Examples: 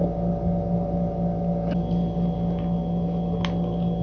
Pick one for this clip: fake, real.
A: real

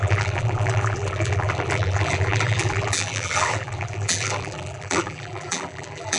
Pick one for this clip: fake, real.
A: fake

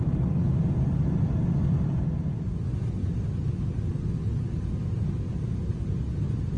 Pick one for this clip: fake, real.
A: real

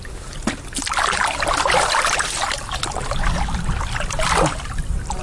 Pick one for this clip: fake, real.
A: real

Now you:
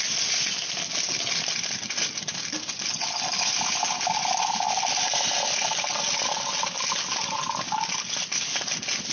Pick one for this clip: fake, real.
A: real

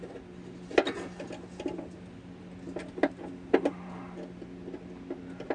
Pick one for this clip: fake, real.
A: real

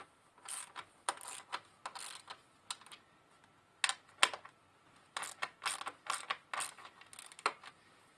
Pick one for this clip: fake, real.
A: real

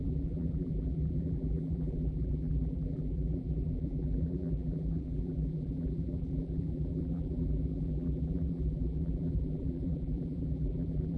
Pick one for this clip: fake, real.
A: fake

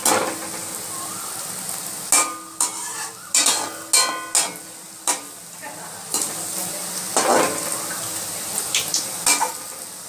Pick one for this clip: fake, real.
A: real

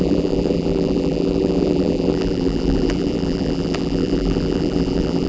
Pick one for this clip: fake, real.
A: fake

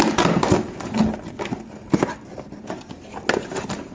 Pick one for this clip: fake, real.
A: real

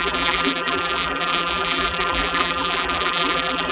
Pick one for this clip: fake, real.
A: fake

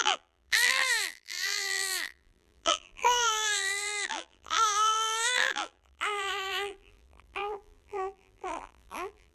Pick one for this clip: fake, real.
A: fake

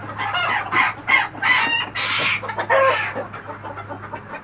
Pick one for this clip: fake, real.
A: real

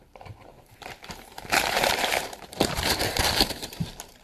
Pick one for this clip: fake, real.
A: fake